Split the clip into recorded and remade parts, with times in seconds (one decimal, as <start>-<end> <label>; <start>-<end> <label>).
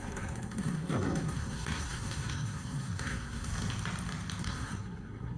0.0-3.5 remade; 3.5-4.4 recorded; 4.4-5.4 remade